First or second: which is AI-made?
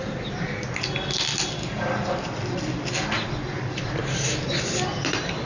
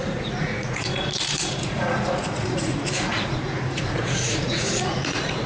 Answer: second